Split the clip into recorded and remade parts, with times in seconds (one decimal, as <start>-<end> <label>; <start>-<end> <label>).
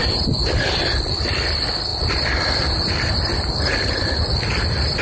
0.0-5.0 recorded